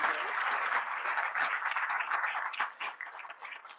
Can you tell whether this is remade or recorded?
remade